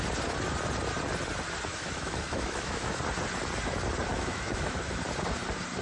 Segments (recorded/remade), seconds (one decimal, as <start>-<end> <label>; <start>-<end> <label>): 0.0-1.7 recorded; 1.7-3.0 remade; 3.0-4.1 recorded; 4.1-5.0 remade; 5.0-5.8 recorded